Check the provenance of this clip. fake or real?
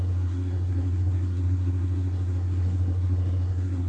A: fake